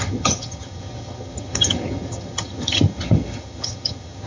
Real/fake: fake